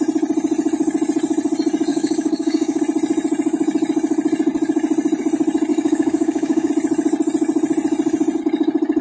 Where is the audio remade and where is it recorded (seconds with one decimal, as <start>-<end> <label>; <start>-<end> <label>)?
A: 0.0-1.9 recorded; 1.9-2.8 remade; 2.8-5.7 recorded; 5.7-6.7 remade; 6.7-9.0 recorded